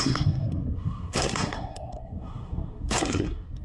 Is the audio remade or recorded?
remade